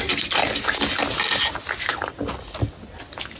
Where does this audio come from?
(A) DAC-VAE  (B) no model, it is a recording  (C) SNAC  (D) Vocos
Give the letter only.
B